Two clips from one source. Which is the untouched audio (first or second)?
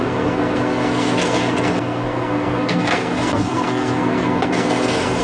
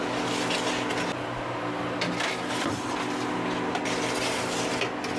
second